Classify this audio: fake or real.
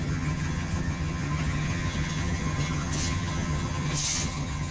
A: fake